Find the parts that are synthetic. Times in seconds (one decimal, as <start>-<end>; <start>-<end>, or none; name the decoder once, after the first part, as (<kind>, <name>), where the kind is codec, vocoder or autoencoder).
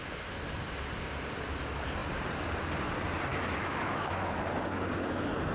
3.3-4.3 (autoencoder, DAC-VAE)